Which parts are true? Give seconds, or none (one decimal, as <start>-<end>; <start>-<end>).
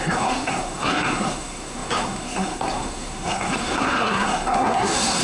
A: none